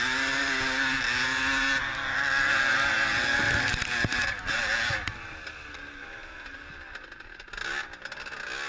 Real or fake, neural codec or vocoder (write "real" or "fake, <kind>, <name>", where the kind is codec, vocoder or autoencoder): real